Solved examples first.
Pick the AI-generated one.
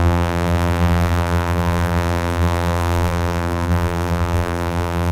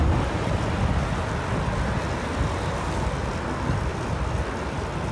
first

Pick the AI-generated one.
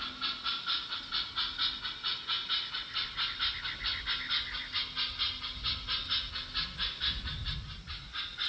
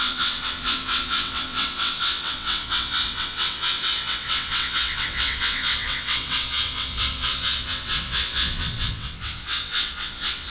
second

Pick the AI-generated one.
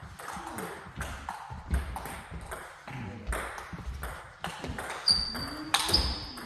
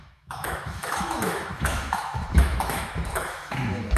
second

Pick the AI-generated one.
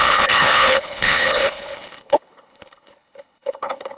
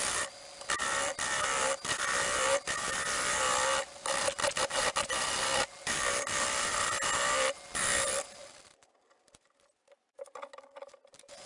first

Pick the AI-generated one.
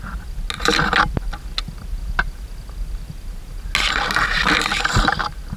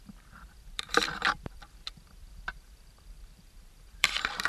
second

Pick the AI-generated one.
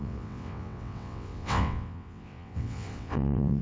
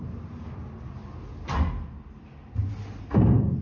first